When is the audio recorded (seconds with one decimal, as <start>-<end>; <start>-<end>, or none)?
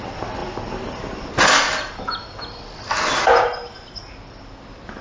0.0-5.0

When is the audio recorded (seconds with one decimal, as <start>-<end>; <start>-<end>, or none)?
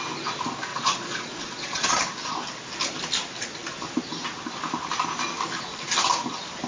0.0-0.7; 2.0-6.7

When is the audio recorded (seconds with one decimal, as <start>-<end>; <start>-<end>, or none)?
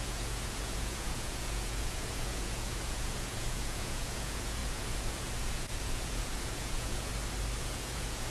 7.1-7.6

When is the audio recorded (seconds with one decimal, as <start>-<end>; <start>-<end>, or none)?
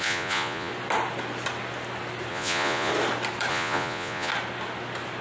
0.7-2.3; 2.9-3.5; 4.3-5.2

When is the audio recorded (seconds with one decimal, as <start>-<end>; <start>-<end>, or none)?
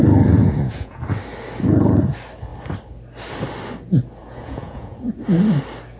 0.0-0.4; 1.0-4.2; 5.1-6.0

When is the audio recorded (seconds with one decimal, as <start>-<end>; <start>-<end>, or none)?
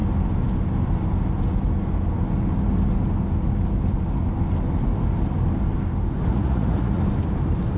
0.0-6.3; 7.0-7.8